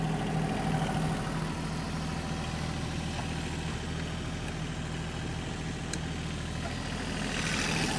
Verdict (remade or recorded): recorded